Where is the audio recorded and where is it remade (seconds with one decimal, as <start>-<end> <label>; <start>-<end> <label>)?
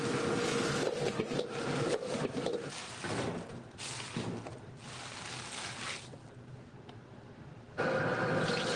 0.0-8.8 recorded